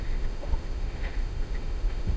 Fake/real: fake